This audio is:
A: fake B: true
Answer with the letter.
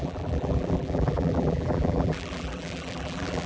A